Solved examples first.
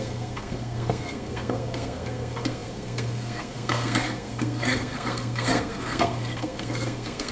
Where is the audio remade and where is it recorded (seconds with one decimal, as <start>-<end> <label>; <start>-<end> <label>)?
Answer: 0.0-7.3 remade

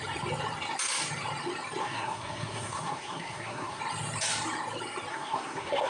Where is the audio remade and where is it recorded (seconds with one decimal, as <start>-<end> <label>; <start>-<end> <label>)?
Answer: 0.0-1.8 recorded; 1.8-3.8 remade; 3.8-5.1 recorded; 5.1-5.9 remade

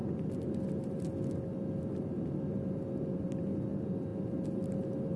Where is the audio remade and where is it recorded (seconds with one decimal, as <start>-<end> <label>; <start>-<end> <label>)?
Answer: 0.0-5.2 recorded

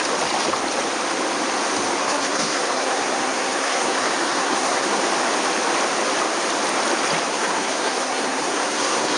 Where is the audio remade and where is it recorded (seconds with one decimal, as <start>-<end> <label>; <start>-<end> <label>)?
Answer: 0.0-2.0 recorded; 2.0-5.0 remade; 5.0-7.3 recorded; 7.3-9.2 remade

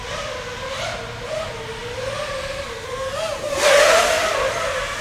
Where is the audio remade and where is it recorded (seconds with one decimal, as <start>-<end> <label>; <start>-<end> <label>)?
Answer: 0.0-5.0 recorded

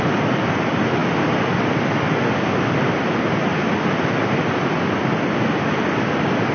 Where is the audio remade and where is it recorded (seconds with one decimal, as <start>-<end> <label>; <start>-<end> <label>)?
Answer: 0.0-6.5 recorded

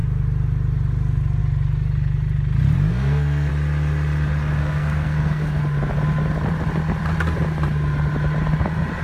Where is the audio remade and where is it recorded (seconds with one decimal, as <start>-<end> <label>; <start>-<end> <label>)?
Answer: 0.0-2.9 recorded; 2.9-3.5 remade; 3.5-4.6 recorded; 4.6-5.6 remade; 5.6-9.0 recorded